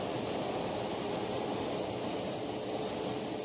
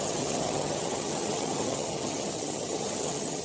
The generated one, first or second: second